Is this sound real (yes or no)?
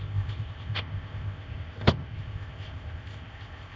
no